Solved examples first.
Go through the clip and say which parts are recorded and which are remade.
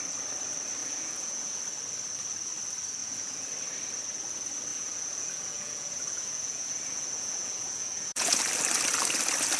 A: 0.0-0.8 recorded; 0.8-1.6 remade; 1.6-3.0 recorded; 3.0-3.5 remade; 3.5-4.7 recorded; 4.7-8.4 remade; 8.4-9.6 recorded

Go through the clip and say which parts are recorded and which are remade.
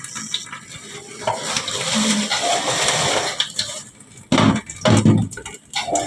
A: 0.0-6.1 recorded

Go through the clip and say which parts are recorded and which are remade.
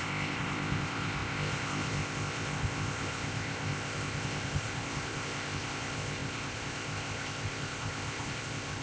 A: 0.0-8.8 remade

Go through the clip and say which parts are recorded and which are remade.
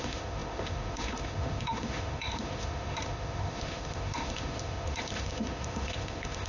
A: 0.0-6.5 remade